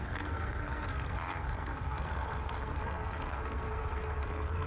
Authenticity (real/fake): fake